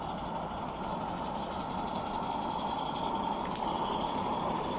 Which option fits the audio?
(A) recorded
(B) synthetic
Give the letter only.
A